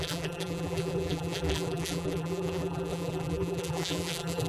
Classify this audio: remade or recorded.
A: remade